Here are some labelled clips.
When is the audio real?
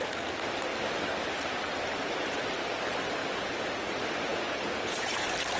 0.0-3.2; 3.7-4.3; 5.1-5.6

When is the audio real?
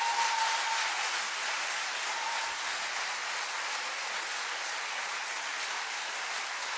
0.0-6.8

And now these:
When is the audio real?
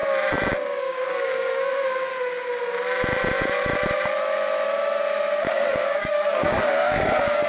0.0-0.8; 2.1-5.5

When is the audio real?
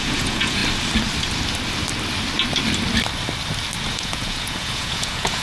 0.6-3.8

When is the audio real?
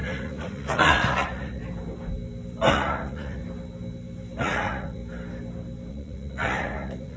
1.6-2.7; 3.4-4.4; 5.0-5.9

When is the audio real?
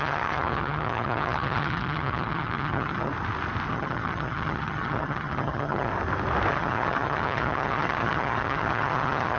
3.1-3.7; 5.9-6.5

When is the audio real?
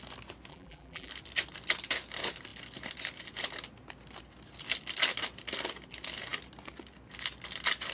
0.0-0.5; 1.1-7.9